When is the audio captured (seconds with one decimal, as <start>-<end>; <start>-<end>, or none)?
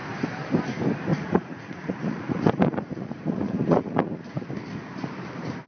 0.0-1.1; 4.5-5.7